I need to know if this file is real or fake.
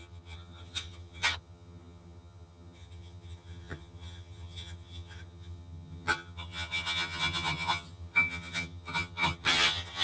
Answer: fake